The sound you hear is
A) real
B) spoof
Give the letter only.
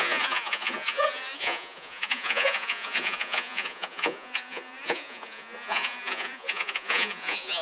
B